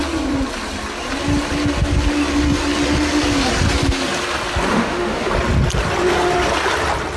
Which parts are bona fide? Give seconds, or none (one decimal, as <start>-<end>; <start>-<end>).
0.0-4.7; 5.3-7.2